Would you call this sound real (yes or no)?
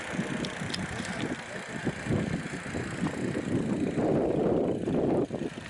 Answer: yes